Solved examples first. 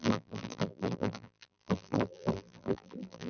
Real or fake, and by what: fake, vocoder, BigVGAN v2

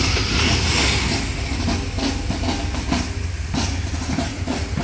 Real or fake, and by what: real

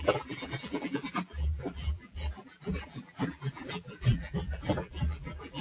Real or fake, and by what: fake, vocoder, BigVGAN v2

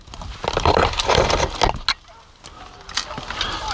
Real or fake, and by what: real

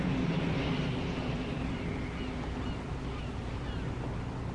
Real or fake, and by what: real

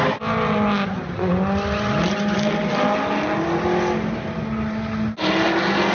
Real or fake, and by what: real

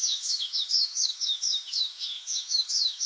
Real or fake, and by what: fake, autoencoder, DAC-VAE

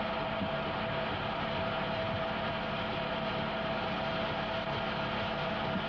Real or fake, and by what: real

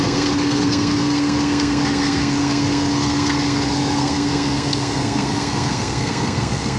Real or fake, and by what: fake, codec, SNAC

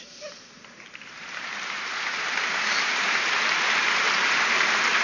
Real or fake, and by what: fake, vocoder, BigVGAN v2